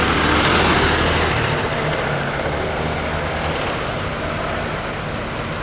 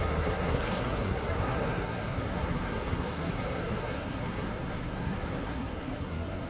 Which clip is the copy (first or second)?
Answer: second